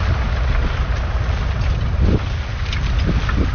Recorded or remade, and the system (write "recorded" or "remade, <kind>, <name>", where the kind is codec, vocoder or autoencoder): recorded